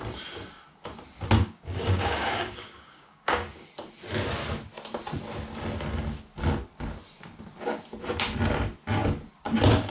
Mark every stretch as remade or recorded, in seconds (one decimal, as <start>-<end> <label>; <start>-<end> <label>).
0.0-1.4 recorded; 1.4-3.7 remade; 3.7-9.9 recorded